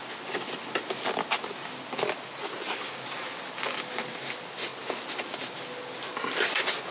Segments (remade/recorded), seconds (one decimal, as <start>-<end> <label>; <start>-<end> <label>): 0.0-6.9 recorded